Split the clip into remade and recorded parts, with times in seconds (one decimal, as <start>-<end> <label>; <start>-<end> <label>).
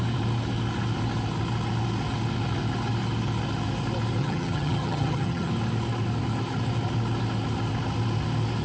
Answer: 0.0-4.2 recorded; 4.2-5.5 remade; 5.5-8.6 recorded